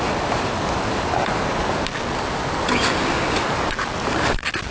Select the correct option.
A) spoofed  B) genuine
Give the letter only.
B